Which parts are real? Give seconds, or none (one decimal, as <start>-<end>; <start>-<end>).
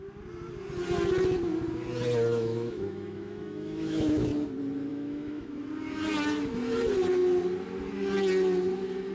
0.0-2.3; 4.3-4.9; 5.6-9.1